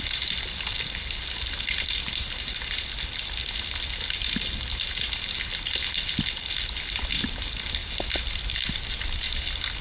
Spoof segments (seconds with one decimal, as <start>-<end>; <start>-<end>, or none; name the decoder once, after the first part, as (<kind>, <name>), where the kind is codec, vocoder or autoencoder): none